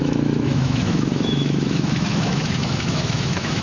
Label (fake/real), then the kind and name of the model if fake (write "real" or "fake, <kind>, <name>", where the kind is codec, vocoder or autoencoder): fake, autoencoder, DAC-VAE